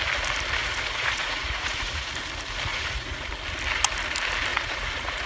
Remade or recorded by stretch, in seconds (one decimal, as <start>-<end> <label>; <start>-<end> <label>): 0.0-0.6 recorded; 0.6-2.1 remade; 2.1-2.7 recorded; 2.7-3.3 remade; 3.3-4.5 recorded; 4.5-5.3 remade